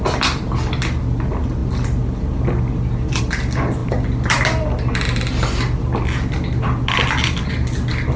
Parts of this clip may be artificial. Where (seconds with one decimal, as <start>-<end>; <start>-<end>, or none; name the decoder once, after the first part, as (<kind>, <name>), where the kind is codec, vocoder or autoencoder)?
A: none